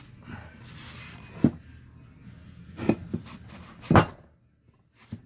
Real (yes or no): yes